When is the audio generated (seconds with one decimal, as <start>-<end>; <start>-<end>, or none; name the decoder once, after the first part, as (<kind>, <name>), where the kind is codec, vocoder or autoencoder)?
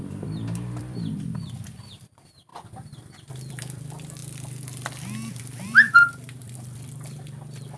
0.0-2.5 (vocoder, BigVGAN v2); 3.3-4.2; 5.4-7.8